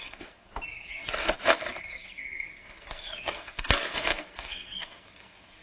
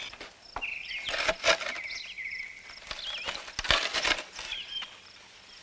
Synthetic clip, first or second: first